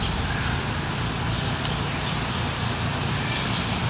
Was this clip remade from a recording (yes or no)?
no